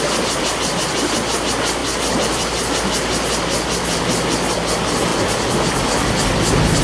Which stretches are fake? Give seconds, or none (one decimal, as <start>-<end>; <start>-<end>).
1.8-4.5